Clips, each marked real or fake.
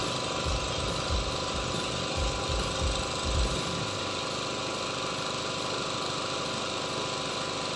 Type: real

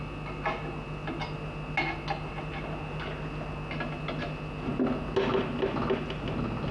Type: real